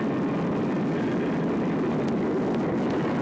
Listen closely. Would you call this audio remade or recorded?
recorded